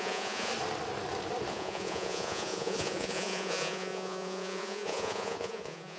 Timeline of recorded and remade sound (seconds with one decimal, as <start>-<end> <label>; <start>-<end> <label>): 0.0-0.5 remade; 0.5-1.5 recorded; 1.5-6.0 remade